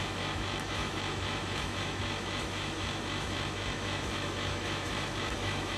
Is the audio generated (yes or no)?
yes